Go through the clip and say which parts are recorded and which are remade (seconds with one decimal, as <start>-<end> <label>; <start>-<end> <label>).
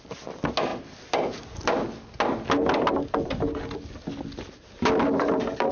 0.0-5.7 recorded